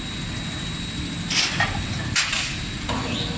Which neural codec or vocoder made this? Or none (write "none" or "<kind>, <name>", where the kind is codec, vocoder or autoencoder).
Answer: none